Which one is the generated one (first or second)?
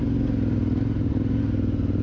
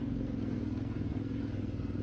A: second